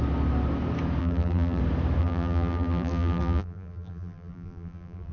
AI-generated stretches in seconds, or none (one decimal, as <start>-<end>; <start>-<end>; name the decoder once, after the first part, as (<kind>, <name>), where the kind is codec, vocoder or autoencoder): 1.0-1.6 (vocoder, BigVGAN v2); 2.0-5.1